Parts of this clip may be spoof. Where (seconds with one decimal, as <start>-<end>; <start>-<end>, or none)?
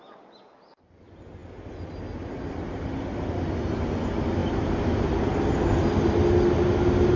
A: none